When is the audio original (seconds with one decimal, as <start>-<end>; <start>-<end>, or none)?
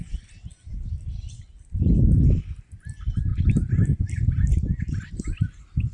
0.0-5.9